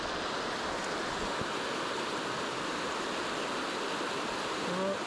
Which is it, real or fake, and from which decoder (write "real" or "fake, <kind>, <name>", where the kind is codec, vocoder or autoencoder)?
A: real